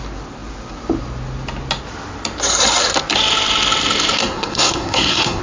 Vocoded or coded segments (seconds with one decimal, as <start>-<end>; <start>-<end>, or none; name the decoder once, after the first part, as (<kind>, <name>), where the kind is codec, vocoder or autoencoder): 4.2-5.4 (codec, SNAC)